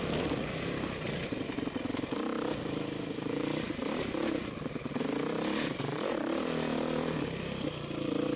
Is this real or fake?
real